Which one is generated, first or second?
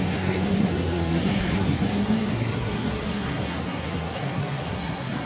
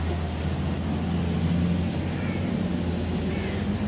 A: first